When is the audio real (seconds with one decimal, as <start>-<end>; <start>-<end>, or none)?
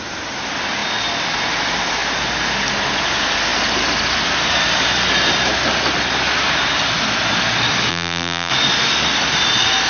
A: 0.0-7.9; 8.5-9.9